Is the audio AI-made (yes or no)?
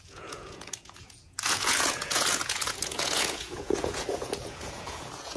yes